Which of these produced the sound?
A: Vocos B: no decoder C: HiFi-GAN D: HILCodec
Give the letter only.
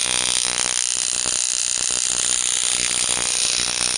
B